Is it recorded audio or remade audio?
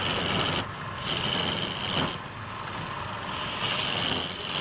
recorded